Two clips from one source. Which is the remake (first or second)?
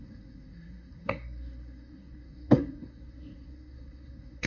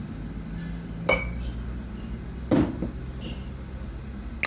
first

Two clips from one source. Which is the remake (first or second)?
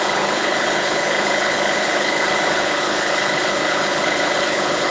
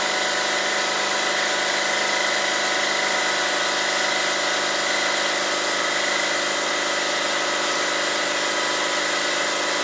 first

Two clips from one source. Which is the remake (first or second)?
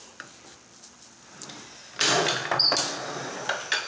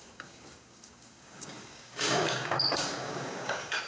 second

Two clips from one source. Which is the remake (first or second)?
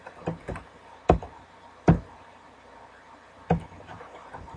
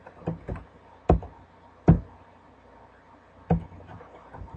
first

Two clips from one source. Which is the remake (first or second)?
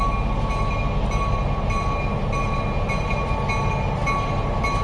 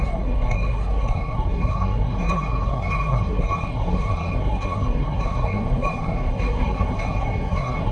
second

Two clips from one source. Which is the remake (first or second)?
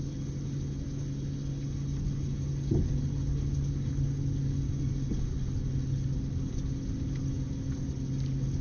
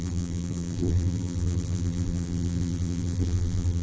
second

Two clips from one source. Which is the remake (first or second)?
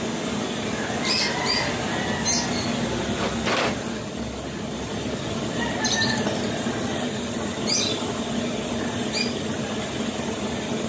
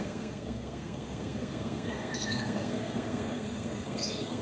second